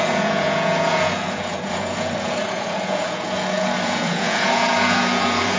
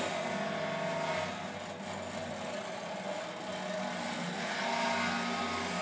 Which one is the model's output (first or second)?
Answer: first